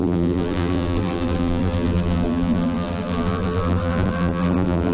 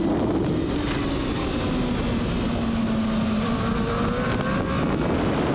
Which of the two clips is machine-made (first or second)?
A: first